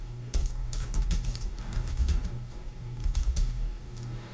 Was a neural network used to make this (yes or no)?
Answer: yes